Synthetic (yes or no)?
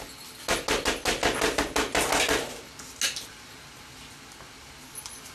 no